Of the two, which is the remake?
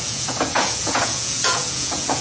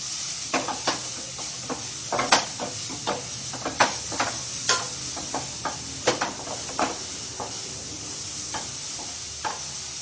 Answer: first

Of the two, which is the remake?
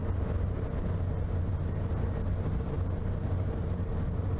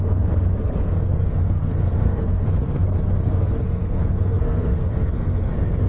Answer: second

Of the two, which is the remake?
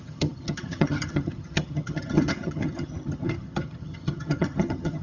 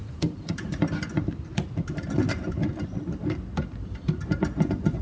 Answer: first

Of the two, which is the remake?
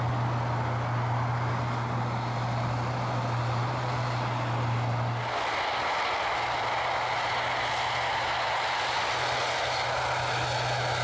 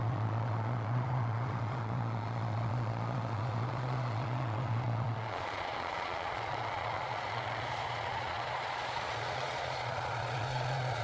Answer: second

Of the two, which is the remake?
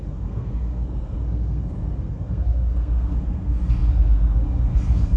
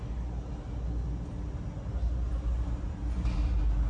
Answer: first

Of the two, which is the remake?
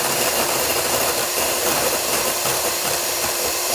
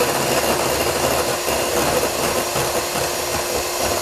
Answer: first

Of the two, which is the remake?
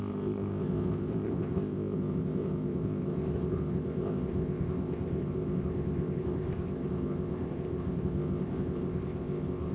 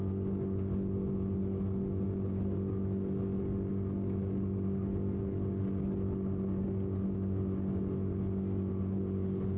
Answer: first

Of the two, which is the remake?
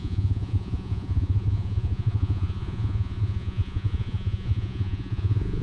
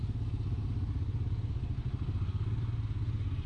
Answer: first